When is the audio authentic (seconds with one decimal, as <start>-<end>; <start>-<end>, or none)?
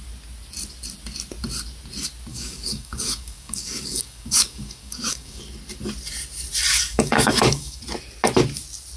0.0-2.3; 5.4-6.7; 7.8-9.0